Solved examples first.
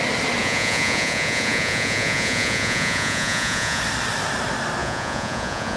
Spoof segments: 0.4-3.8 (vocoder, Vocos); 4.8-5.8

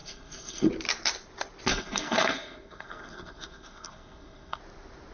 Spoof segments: 0.0-0.7 (codec, SNAC); 1.7-4.6

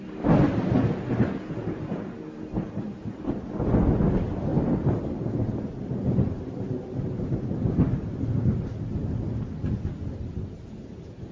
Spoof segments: none

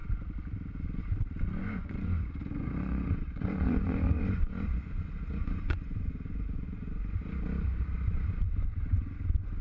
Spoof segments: 1.6-6.9 (vocoder, Vocos); 8.7-9.6

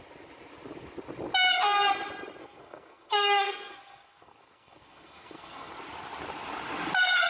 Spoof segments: 2.4-5.7 (codec, SNAC)

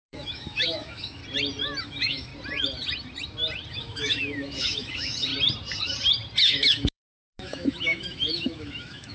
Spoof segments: 0.0-1.2 (autoencoder, DAC-VAE); 1.8-2.3; 3.7-5.3; 6.4-9.1